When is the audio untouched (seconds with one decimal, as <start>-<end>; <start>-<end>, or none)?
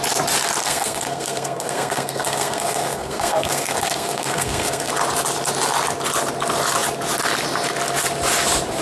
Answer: 0.0-0.6; 4.9-8.8